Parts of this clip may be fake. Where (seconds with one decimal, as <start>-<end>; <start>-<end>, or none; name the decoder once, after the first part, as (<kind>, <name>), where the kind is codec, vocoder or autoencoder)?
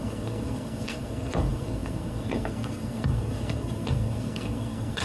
0.0-5.0 (codec, SNAC)